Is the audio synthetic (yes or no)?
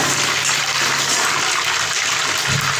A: no